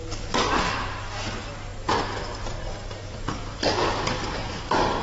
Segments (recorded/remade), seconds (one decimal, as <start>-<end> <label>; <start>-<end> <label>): 0.0-4.4 recorded; 4.4-5.0 remade